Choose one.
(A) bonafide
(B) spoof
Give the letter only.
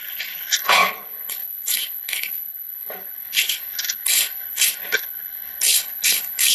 B